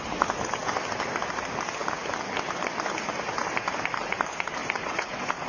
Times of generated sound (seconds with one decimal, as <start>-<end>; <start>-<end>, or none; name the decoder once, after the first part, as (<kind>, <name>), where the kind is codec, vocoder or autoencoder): 4.6-5.5 (vocoder, Vocos)